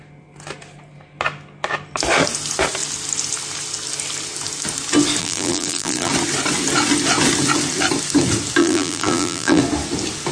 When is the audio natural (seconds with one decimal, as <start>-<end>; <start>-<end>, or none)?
0.0-5.2; 6.1-8.6; 9.6-10.3